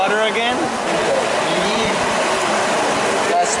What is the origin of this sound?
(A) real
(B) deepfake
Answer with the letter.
A